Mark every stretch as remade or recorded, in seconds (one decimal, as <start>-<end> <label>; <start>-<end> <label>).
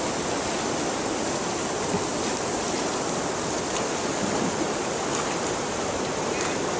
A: 0.0-6.8 recorded